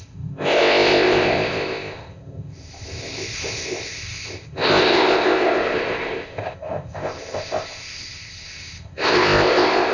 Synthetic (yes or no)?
yes